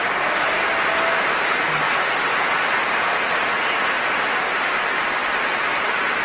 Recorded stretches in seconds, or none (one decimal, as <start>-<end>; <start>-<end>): 0.0-6.2